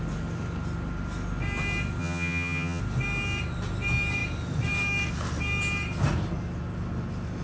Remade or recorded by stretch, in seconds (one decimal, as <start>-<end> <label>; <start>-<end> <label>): 0.0-2.0 recorded; 2.0-2.8 remade; 2.8-7.4 recorded